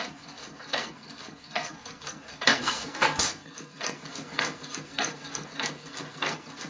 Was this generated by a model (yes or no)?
yes